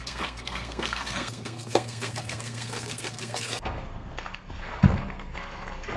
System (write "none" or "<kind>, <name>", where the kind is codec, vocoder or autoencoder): codec, SNAC